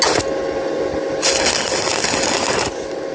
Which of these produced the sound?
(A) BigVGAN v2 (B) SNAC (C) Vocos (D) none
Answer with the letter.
D